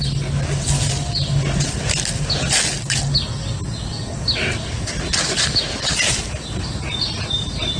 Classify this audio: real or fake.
real